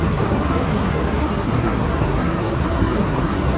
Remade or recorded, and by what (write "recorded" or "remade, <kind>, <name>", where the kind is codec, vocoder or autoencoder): remade, codec, SNAC